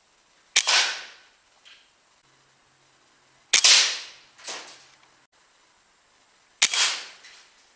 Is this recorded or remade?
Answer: recorded